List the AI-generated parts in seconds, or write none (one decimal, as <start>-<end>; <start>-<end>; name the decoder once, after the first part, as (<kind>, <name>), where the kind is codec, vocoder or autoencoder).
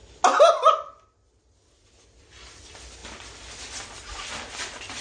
none